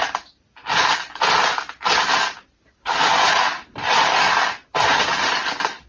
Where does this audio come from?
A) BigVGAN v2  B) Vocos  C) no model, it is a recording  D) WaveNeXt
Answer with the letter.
C